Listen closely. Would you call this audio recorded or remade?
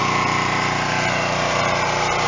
recorded